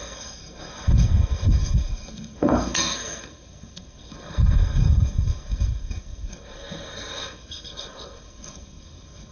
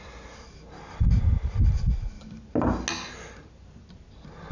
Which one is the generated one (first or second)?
first